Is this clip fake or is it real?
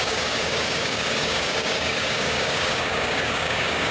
fake